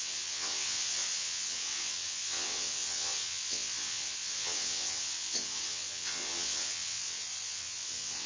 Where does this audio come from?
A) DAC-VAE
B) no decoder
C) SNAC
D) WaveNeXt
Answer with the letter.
D